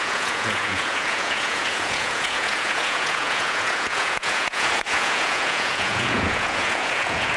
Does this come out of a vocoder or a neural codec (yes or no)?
yes